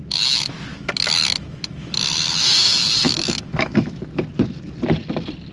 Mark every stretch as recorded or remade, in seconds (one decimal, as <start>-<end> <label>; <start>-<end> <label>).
0.0-0.7 recorded; 0.7-4.0 remade; 4.0-5.5 recorded